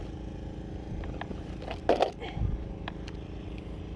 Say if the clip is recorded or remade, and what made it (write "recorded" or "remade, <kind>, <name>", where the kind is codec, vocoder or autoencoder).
recorded